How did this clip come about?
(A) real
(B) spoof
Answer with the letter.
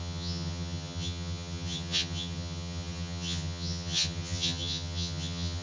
B